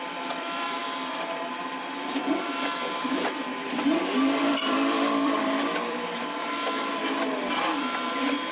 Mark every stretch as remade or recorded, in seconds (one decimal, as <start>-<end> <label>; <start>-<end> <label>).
0.0-8.5 remade